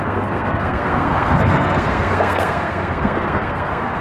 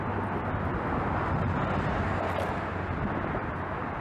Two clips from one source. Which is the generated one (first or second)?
first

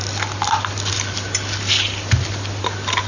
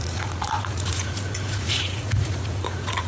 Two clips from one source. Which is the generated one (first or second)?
second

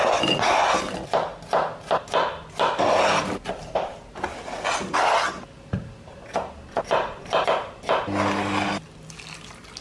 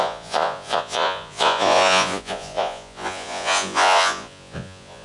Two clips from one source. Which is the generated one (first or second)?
second